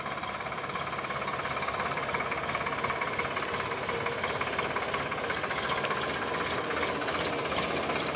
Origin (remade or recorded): recorded